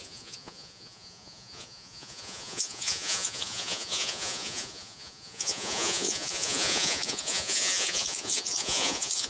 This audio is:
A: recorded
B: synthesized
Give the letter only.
B